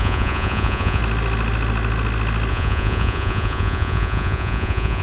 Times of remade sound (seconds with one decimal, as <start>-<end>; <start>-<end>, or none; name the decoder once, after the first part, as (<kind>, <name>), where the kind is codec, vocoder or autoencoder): 0.0-1.0 (vocoder, Vocos); 2.5-5.0

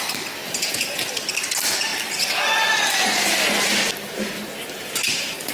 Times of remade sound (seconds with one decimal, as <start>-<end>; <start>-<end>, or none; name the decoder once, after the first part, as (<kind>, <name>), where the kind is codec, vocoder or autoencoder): 0.4-1.0 (vocoder, Vocos)

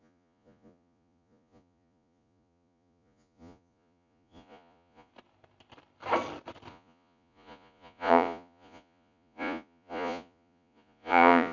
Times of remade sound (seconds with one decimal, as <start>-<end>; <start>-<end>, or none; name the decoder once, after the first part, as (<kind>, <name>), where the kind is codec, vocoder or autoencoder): 0.0-5.1 (vocoder, Vocos); 6.7-11.5

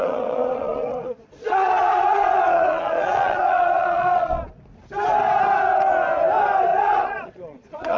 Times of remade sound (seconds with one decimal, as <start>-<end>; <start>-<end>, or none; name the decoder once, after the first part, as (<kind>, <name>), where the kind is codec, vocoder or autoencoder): 0.0-4.5 (vocoder, Vocos); 6.7-8.0

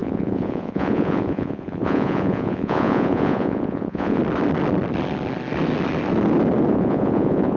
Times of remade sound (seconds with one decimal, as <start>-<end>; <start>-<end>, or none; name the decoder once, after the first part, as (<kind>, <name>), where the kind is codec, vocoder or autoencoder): 0.0-4.2 (vocoder, Vocos); 6.7-7.6

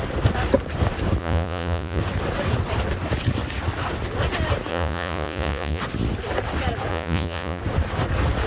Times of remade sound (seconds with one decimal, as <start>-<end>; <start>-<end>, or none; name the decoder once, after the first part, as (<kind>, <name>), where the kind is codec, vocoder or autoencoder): 1.2-2.0 (vocoder, Vocos); 4.7-5.8; 6.9-7.6

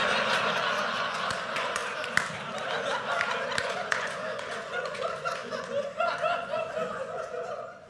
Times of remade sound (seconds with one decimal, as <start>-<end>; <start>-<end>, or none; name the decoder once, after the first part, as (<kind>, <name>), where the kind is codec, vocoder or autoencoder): 0.0-1.8 (vocoder, Vocos); 3.6-7.9